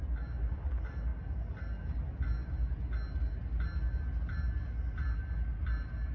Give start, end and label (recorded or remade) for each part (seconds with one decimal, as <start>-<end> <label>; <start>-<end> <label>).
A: 0.0-6.1 recorded